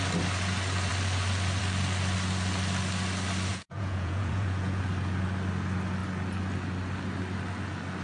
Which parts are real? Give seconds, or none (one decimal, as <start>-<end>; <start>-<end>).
0.0-3.5; 4.8-8.0